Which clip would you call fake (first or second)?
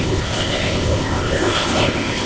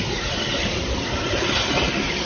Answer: first